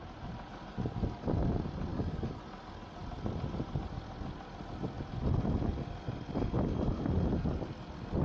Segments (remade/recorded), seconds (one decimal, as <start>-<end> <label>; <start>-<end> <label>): 0.0-1.9 recorded; 1.9-2.4 remade; 2.4-8.2 recorded